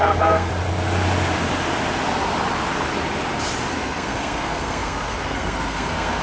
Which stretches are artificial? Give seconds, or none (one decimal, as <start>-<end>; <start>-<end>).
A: 0.0-0.5; 3.7-6.2